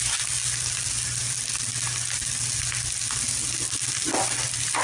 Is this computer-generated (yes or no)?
no